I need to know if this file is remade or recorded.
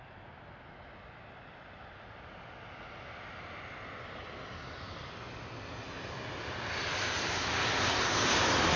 recorded